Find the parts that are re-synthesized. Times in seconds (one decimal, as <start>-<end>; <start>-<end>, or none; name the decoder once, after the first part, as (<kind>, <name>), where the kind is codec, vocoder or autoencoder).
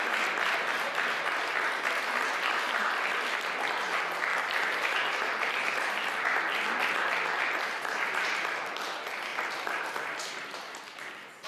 4.3-5.5 (vocoder, BigVGAN v2)